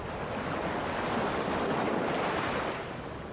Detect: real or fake real